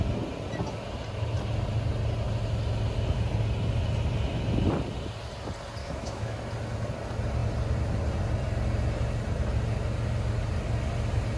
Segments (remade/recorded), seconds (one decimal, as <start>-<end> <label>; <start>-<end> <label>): 0.0-5.8 recorded; 5.8-6.4 remade; 6.4-11.4 recorded